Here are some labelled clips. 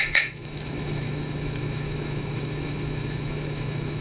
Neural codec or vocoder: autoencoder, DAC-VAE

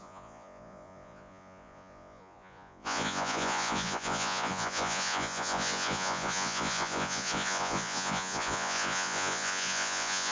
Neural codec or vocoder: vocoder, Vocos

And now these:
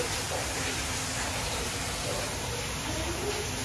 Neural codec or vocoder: vocoder, BigVGAN v2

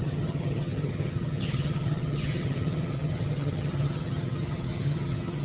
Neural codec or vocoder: vocoder, HiFi-GAN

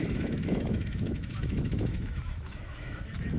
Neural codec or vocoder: autoencoder, DAC-VAE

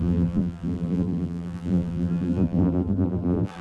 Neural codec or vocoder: vocoder, BigVGAN v2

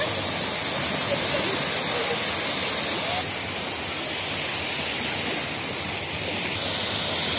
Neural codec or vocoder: none